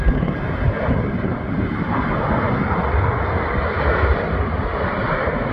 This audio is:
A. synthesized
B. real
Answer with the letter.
B